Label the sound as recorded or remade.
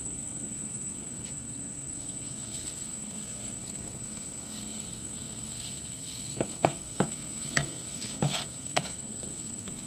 remade